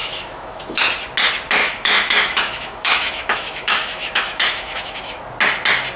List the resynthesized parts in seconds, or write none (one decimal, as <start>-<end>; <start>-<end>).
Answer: 0.0-0.8; 1.6-5.2